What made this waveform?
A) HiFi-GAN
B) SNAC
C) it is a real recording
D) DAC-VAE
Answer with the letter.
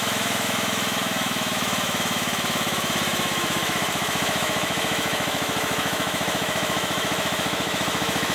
D